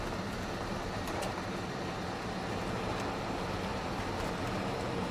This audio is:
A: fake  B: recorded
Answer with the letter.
B